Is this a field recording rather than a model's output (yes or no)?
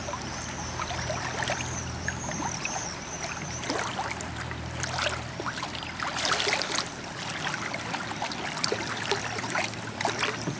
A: no